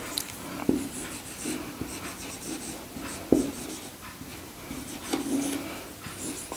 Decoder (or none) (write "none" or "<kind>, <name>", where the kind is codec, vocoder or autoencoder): none